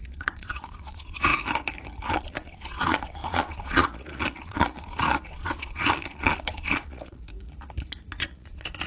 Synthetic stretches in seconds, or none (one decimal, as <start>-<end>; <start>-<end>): 0.0-1.3; 2.1-7.3; 8.2-8.9